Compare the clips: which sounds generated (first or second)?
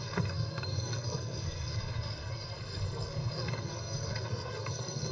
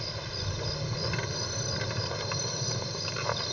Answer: first